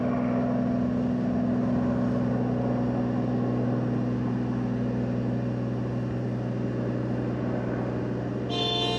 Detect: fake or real real